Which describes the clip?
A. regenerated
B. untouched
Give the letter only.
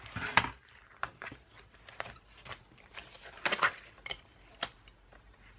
B